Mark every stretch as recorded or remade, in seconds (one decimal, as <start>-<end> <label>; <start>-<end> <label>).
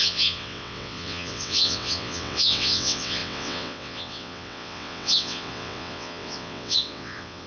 0.0-7.5 remade